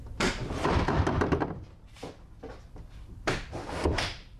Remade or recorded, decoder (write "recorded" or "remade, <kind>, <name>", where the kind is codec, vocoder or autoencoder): remade, vocoder, BigVGAN v2